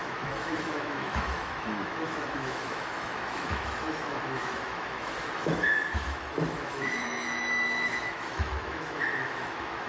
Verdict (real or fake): fake